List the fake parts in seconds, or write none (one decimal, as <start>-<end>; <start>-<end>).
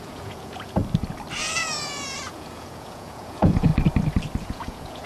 0.0-0.8; 1.4-3.7; 4.4-5.1